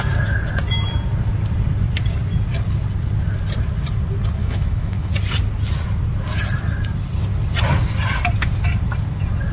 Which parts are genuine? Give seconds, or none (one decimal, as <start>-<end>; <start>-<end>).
0.0-4.4; 5.1-9.5